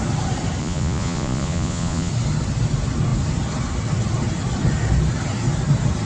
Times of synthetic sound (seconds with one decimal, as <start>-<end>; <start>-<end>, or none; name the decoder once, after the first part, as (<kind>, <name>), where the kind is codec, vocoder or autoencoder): 0.6-2.1 (vocoder, Vocos)